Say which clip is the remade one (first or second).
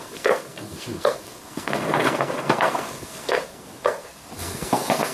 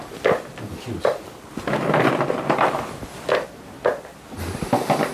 first